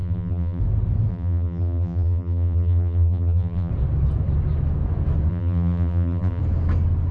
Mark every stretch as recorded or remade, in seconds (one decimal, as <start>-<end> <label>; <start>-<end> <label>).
0.0-0.6 remade; 0.6-1.1 recorded; 1.1-3.7 remade; 3.7-5.3 recorded; 5.3-6.4 remade; 6.4-7.1 recorded